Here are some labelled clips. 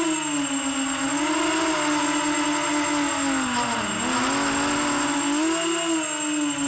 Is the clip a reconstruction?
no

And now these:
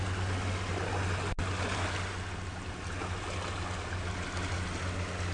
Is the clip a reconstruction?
no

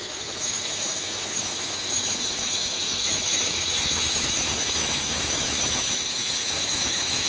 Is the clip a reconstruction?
yes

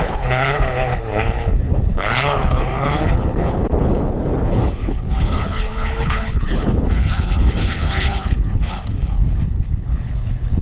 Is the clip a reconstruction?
yes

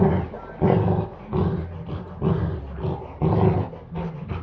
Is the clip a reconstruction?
no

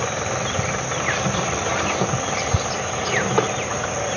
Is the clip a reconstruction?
no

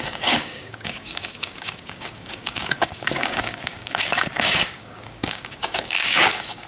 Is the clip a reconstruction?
yes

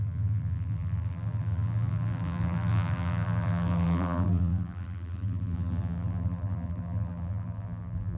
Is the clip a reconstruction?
yes